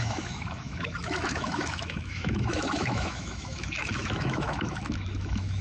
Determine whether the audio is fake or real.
fake